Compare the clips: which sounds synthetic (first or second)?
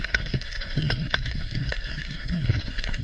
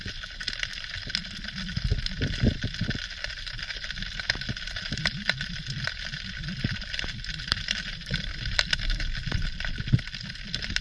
first